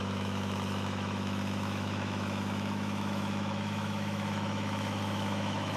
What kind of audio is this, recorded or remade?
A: remade